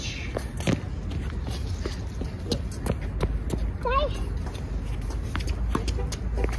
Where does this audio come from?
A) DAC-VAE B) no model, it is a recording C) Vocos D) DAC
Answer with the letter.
B